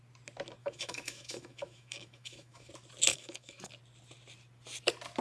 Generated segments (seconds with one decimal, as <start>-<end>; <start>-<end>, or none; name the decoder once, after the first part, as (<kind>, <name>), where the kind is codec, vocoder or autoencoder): 0.6-2.7 (autoencoder, DAC-VAE); 3.1-3.7